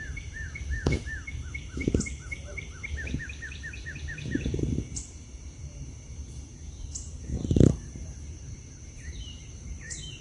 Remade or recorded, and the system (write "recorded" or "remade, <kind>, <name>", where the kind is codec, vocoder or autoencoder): remade, vocoder, BigVGAN v2